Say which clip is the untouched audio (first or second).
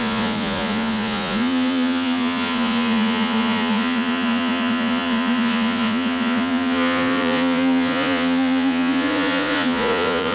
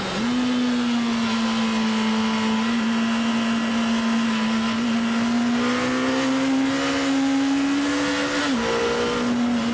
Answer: second